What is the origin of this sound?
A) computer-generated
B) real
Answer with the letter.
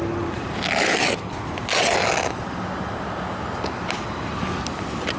B